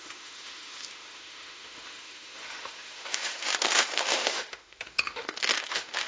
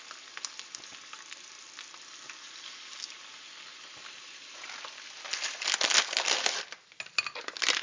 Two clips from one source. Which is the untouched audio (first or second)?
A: second